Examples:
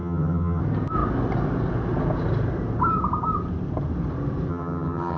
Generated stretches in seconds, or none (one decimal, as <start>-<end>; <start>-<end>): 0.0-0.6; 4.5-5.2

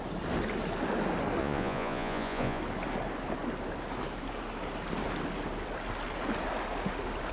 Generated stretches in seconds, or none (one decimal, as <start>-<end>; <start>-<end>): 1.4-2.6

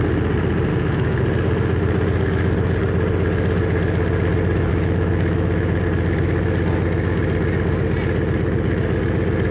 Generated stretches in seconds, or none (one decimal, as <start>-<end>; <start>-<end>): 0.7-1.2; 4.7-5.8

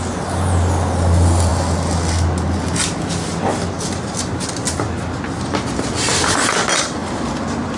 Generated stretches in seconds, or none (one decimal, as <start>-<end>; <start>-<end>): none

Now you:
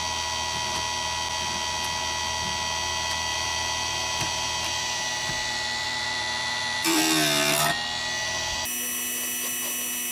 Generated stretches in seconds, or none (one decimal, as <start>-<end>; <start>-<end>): 3.3-7.0